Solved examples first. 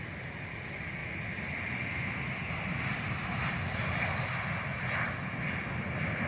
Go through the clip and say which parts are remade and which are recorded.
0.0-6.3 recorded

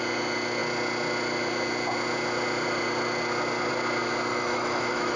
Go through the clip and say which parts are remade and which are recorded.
0.0-4.3 recorded; 4.3-5.2 remade

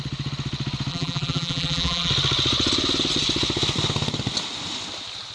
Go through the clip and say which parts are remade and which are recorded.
0.0-0.9 recorded; 0.9-2.1 remade; 2.1-5.3 recorded

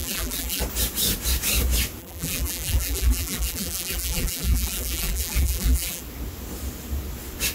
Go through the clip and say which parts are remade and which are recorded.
0.0-0.6 remade; 0.6-2.0 recorded; 2.0-6.0 remade; 6.0-7.5 recorded

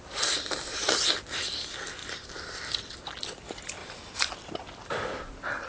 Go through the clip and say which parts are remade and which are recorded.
0.0-2.0 recorded; 2.0-2.6 remade; 2.6-3.8 recorded; 3.8-4.3 remade; 4.3-5.7 recorded

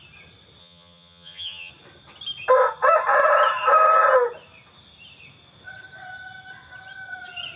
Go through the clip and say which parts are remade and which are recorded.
0.0-0.6 recorded; 0.6-1.7 remade; 1.7-7.6 recorded

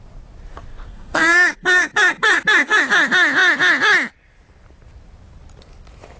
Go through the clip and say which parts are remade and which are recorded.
0.0-0.9 recorded; 0.9-2.8 remade; 2.8-6.2 recorded